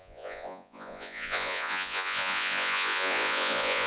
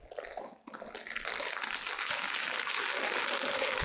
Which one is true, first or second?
second